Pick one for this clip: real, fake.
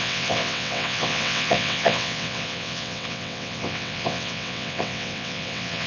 fake